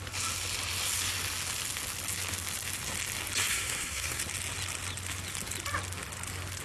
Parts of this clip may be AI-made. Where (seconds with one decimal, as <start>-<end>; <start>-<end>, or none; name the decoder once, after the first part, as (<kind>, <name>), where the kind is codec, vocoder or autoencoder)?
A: 3.5-4.2 (codec, SNAC)